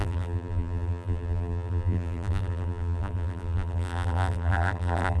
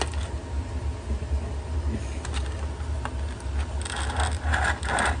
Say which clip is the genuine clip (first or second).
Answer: second